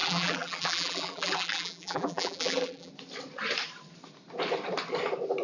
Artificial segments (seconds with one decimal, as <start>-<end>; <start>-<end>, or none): 0.0-2.9